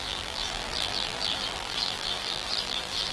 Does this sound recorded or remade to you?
remade